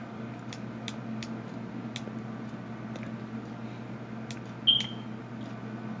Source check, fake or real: real